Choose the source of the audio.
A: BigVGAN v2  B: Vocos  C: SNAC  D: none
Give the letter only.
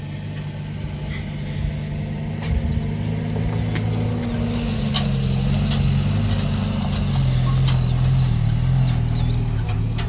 D